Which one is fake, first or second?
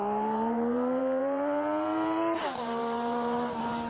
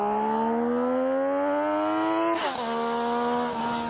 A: first